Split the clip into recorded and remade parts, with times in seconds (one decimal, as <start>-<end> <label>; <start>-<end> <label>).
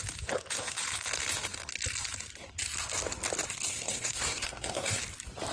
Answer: 0.0-3.7 recorded; 3.7-5.0 remade; 5.0-5.5 recorded